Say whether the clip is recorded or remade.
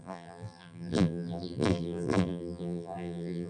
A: remade